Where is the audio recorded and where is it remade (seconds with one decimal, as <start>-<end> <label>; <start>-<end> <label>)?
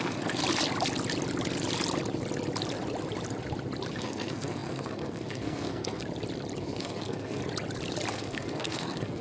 0.0-0.4 remade; 0.4-3.9 recorded; 3.9-6.0 remade; 6.0-6.6 recorded; 6.6-7.4 remade; 7.4-8.1 recorded; 8.1-9.2 remade